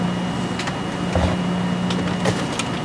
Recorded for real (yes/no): yes